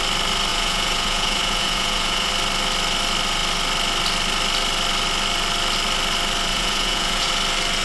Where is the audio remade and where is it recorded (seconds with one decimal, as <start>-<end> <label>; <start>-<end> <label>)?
0.0-0.5 recorded; 0.5-2.3 remade; 2.3-6.5 recorded; 6.5-7.3 remade; 7.3-7.8 recorded